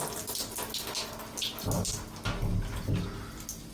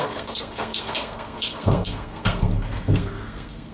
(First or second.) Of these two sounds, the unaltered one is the first